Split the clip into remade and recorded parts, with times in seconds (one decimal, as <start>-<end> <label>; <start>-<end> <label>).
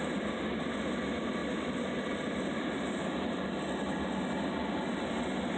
0.0-1.4 recorded; 1.4-3.6 remade; 3.6-5.6 recorded